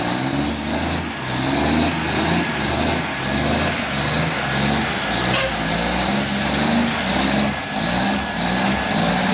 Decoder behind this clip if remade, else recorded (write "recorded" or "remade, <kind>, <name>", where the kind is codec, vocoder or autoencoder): recorded